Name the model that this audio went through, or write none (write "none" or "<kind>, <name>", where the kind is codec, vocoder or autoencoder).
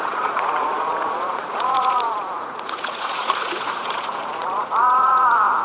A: vocoder, Vocos